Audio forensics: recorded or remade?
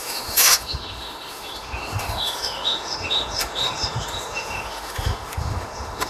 remade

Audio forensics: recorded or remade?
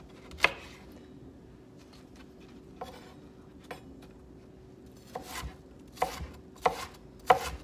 recorded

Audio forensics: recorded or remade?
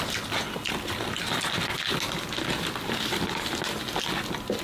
recorded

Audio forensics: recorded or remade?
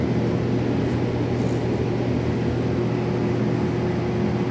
recorded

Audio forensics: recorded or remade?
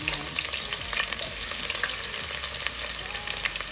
recorded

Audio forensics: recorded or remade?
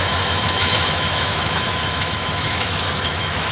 remade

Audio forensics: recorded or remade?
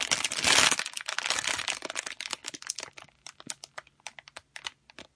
recorded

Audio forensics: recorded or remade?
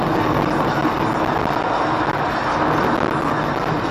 recorded